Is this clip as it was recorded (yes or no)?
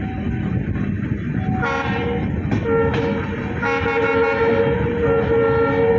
yes